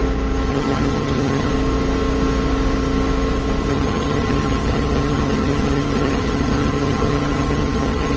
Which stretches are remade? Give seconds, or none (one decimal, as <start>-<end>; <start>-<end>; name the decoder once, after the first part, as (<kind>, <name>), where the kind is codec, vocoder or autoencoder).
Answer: 0.5-1.5 (vocoder, HiFi-GAN); 3.7-8.2